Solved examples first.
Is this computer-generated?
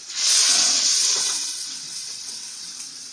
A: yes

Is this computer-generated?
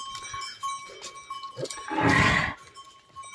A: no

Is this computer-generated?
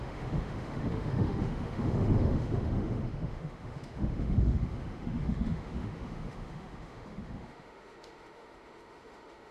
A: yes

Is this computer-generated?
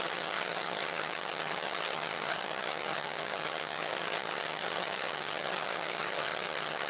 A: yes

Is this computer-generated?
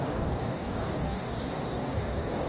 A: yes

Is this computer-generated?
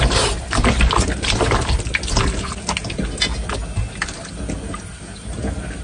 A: no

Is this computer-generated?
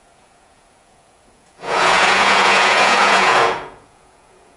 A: yes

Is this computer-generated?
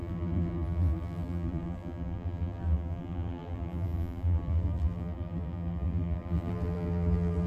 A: yes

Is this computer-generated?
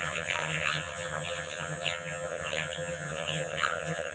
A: yes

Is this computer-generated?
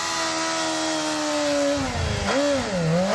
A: no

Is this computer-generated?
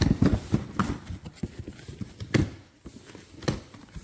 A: no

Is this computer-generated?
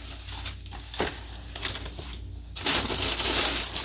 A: no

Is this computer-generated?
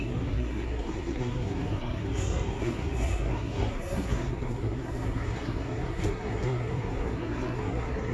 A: yes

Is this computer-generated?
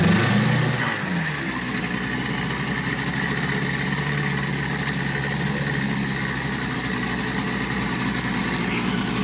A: no